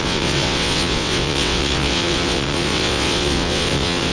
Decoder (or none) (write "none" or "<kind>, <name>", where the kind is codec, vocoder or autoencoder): vocoder, WaveNeXt